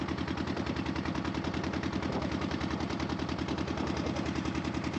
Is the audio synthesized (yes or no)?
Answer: yes